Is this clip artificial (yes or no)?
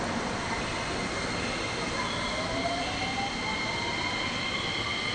no